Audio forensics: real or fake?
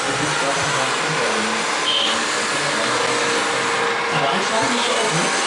real